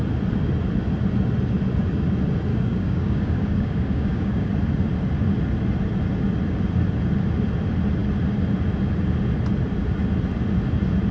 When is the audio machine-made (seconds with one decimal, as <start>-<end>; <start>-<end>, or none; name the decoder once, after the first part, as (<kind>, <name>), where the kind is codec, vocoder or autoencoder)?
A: 2.5-4.5 (codec, DAC)